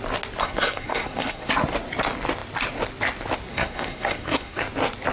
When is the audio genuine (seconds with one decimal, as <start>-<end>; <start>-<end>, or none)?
0.0-0.4; 1.5-3.5; 4.6-5.1